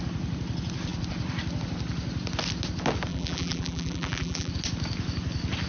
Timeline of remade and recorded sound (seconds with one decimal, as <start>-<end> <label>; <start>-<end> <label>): 0.0-3.1 recorded; 3.1-4.5 remade; 4.5-5.7 recorded